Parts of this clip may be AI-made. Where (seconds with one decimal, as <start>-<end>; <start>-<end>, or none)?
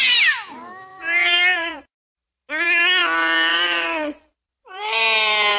0.9-2.5; 3.5-5.6